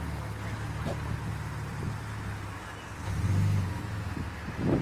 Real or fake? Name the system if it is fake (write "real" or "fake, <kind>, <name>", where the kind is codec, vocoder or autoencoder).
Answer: real